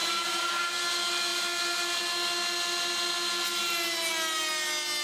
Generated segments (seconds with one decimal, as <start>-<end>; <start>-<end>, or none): 0.0-0.6; 1.3-2.0